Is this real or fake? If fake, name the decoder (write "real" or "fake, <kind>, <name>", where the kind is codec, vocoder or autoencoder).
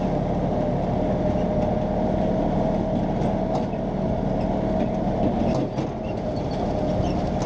real